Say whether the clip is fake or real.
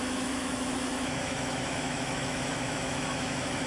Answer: fake